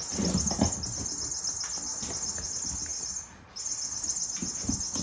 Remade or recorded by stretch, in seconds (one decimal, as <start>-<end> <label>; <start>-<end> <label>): 0.0-5.0 recorded